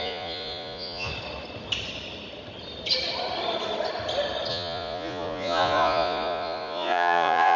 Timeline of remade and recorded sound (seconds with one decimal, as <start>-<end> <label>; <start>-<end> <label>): 0.0-1.1 remade; 1.1-4.5 recorded; 4.5-7.6 remade